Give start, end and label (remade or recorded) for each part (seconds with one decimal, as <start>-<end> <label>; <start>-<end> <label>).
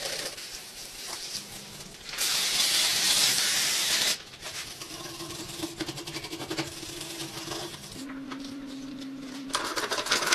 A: 0.0-7.2 remade; 7.2-7.9 recorded; 7.9-10.3 remade